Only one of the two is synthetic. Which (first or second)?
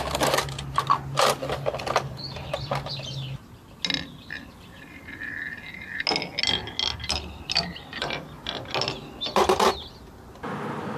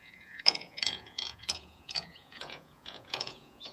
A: second